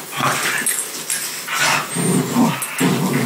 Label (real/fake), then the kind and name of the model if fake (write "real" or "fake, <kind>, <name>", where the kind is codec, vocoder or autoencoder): real